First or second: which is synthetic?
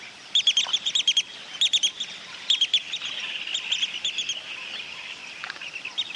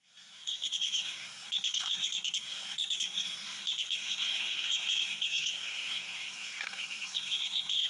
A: second